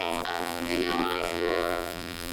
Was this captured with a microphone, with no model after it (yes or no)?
no